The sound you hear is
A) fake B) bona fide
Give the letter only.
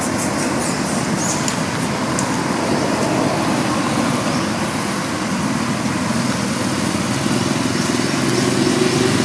B